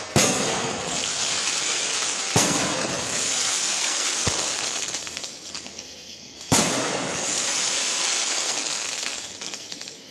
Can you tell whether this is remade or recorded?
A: remade